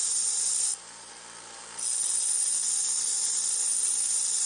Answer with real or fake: real